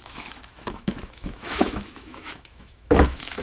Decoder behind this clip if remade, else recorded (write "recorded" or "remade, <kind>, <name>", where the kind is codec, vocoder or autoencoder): remade, autoencoder, DAC-VAE